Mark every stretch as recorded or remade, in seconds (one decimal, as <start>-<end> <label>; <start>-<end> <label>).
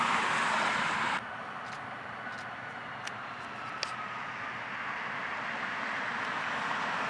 0.0-7.1 recorded